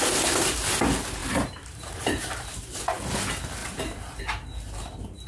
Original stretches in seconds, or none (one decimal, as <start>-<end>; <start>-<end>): 0.0-1.2; 2.8-3.6; 4.2-5.3